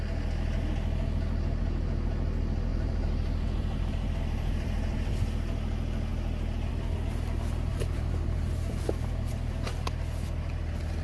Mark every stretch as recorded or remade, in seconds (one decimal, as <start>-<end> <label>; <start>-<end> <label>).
0.0-2.7 recorded; 2.7-5.1 remade; 5.1-7.7 recorded; 7.7-9.3 remade; 9.3-11.0 recorded